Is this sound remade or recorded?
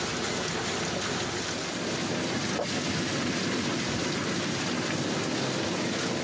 recorded